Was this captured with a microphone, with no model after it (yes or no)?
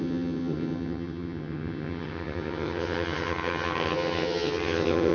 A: no